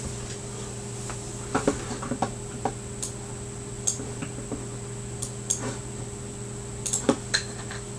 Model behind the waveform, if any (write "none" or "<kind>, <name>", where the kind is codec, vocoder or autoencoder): none